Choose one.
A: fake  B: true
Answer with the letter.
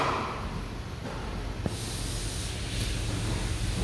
B